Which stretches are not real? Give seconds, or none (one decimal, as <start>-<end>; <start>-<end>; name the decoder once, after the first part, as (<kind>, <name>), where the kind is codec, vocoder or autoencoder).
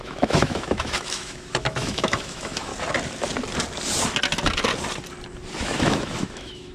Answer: 0.0-2.7 (autoencoder, DAC-VAE); 5.6-6.7